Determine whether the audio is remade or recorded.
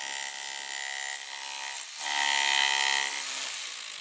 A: recorded